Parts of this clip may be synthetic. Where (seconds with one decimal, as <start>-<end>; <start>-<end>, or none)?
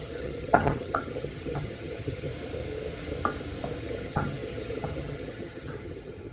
0.0-2.3; 3.8-6.3